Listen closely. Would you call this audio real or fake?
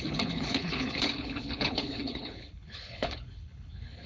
fake